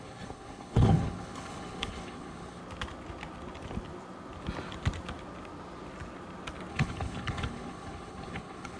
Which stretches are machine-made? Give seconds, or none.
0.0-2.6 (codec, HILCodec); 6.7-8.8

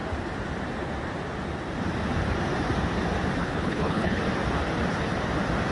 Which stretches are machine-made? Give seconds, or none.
3.4-4.2 (codec, HILCodec)

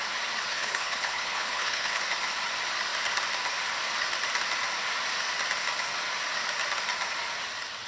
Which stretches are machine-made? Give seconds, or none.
0.5-2.0 (codec, HILCodec)

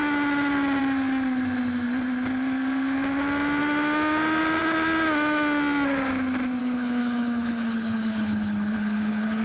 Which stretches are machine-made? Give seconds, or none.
6.6-9.4 (codec, HILCodec)

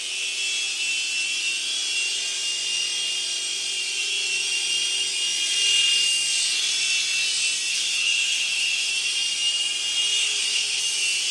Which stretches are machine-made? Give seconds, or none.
7.7-8.9 (codec, HILCodec); 10.2-10.8

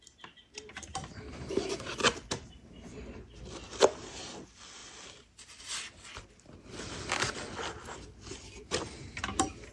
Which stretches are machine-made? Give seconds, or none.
none

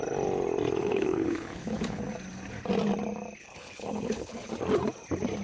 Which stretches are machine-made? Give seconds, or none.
0.8-2.0 (codec, HILCodec); 3.4-4.5

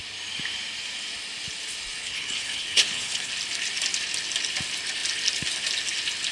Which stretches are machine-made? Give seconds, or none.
2.0-3.3 (codec, HILCodec)